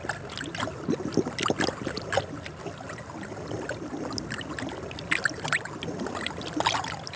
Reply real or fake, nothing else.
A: real